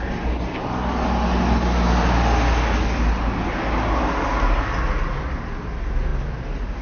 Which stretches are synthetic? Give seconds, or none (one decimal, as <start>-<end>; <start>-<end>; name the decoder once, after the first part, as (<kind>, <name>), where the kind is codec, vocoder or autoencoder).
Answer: none